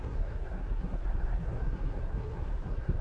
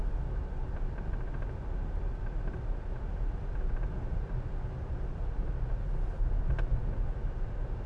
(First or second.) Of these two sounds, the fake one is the first